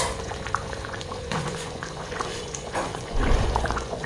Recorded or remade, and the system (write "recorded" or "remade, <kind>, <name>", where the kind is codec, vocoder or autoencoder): remade, vocoder, Vocos